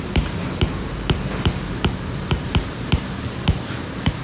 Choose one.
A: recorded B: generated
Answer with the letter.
B